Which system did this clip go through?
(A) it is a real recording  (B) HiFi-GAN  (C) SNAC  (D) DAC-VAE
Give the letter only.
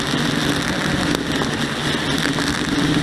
A